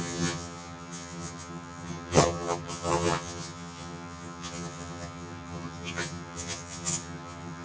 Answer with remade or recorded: remade